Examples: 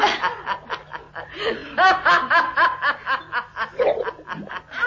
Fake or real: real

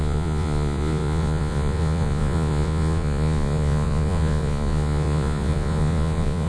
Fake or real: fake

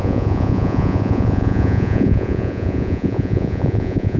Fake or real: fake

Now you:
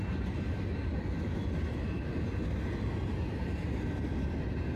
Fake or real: real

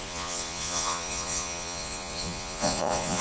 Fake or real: fake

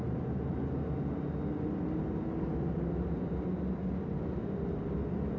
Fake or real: real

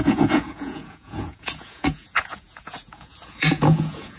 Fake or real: fake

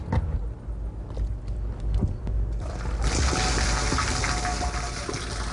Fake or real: real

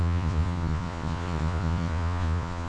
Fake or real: fake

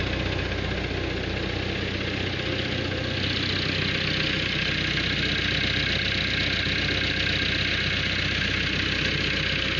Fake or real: real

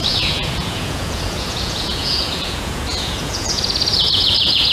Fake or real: fake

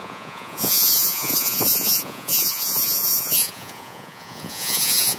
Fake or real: fake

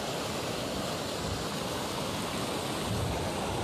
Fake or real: real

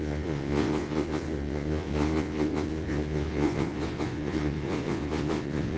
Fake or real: fake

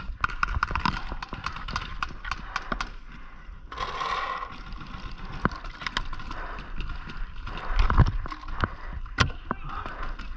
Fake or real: real